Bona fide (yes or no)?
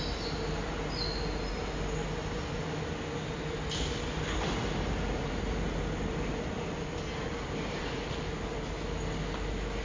yes